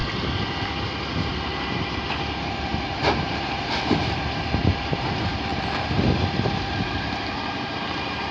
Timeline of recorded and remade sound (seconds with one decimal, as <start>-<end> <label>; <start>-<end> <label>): 0.0-0.8 recorded; 0.8-8.3 remade